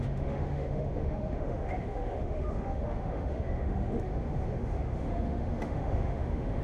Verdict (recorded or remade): remade